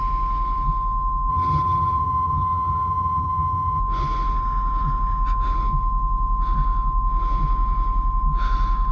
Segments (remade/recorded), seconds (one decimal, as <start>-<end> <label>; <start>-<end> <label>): 0.0-1.3 recorded; 1.3-3.8 remade; 3.8-8.9 recorded